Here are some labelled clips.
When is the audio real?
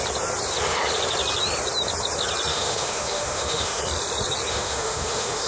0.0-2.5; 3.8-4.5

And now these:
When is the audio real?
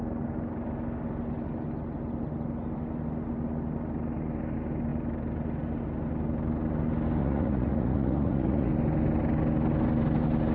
0.0-7.2; 8.7-10.5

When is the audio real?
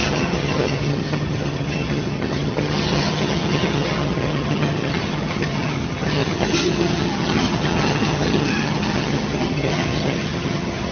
none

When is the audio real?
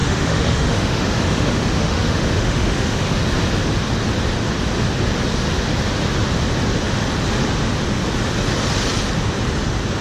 3.2-10.0